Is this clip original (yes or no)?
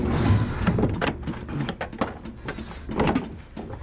yes